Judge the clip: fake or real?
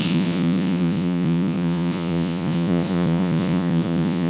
fake